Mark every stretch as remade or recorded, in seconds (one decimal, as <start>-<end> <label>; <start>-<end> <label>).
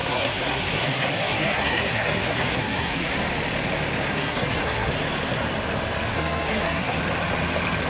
0.0-3.1 remade; 3.1-4.1 recorded; 4.1-4.9 remade; 4.9-6.1 recorded; 6.1-7.0 remade; 7.0-7.9 recorded